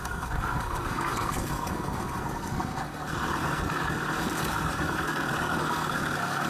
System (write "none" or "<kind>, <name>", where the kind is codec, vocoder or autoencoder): codec, SNAC